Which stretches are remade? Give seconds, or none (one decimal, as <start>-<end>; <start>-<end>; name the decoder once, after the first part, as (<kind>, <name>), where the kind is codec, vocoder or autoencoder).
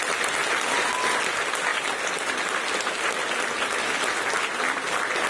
none